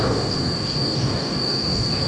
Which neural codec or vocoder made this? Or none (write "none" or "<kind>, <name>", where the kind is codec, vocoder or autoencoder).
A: codec, DAC